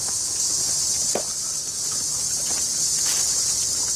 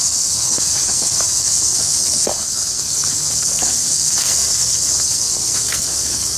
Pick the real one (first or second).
first